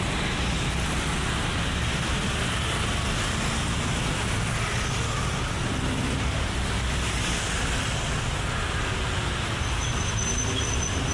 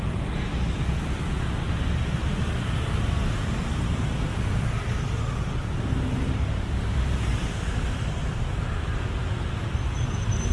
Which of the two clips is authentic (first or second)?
first